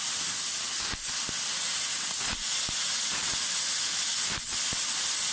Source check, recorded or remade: recorded